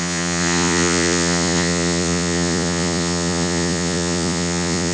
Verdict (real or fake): fake